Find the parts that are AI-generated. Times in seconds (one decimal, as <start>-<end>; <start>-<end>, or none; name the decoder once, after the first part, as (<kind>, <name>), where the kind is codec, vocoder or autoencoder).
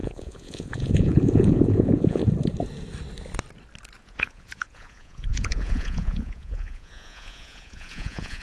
0.0-2.2 (vocoder, Vocos); 4.0-8.4